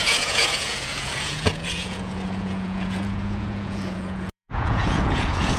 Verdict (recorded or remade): remade